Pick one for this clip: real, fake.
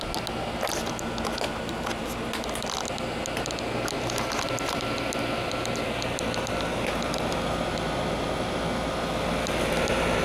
real